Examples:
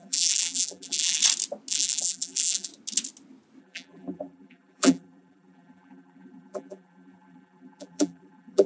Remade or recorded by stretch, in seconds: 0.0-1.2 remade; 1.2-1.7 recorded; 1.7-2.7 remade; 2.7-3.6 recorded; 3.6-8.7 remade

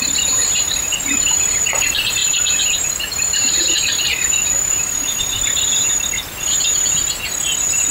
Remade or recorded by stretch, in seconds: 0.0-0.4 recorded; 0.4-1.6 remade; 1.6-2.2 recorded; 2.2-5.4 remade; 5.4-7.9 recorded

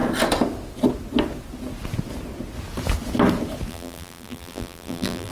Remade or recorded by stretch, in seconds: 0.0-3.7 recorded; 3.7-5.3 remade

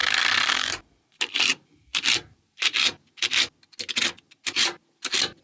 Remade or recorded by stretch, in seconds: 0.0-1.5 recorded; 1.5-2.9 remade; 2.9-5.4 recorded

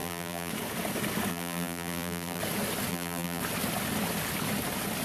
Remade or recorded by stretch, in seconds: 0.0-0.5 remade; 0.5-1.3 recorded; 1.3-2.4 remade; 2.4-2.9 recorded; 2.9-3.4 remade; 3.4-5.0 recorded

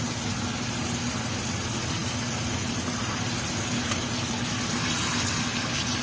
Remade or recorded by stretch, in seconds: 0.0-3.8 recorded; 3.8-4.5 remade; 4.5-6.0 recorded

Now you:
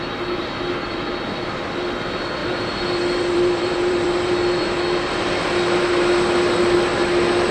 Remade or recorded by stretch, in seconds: 0.0-2.4 recorded; 2.4-4.3 remade; 4.3-7.5 recorded